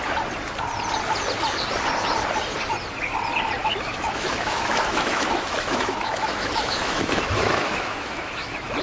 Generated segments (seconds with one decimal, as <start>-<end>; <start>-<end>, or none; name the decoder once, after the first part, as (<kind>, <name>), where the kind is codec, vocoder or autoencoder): 3.6-8.8 (autoencoder, DAC-VAE)